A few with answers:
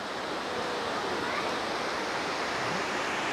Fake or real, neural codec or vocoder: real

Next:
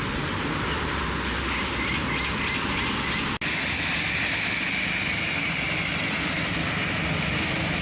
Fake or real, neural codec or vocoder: real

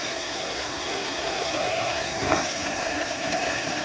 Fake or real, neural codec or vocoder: fake, codec, SNAC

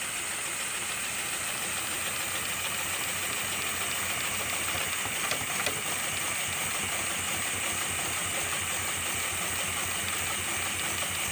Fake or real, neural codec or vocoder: real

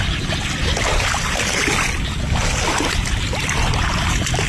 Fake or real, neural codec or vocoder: real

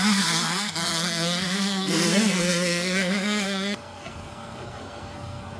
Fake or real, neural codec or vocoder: fake, codec, SNAC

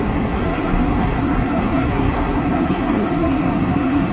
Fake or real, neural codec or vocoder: fake, codec, SNAC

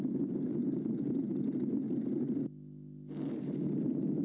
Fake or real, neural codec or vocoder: real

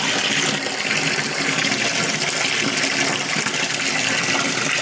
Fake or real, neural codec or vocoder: real